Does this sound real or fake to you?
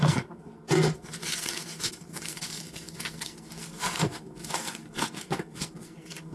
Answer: fake